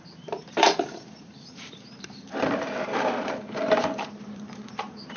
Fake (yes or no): yes